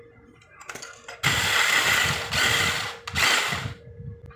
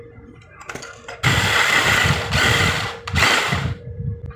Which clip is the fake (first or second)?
second